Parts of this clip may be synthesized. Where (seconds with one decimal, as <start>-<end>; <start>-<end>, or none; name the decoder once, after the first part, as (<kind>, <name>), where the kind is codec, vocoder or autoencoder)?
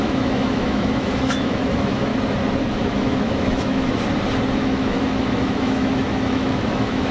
0.0-2.1 (autoencoder, DAC-VAE); 2.6-3.9; 4.5-7.1